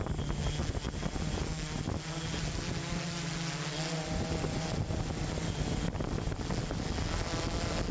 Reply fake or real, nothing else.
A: real